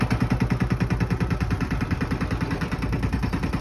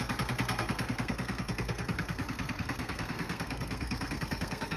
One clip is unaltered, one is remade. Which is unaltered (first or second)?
first